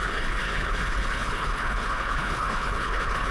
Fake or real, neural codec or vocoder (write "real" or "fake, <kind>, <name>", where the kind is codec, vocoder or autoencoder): fake, codec, HILCodec